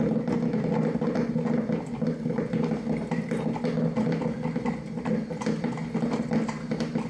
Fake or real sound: real